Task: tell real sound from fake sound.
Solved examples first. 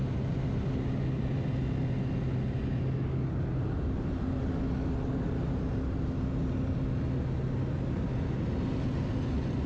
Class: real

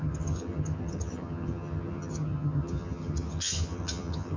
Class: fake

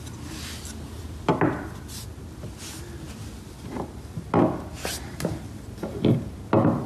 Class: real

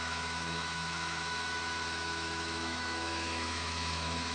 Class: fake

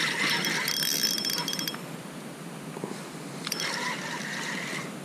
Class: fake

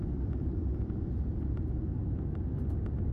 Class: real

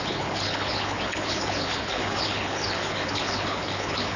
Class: fake